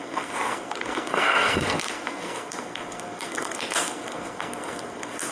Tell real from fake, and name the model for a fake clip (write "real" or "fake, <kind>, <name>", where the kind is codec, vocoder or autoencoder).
fake, codec, SNAC